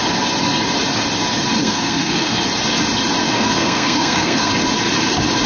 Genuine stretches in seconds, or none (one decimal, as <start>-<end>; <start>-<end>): 0.0-1.6; 2.4-3.2; 4.5-5.5